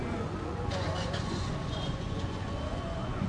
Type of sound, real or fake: fake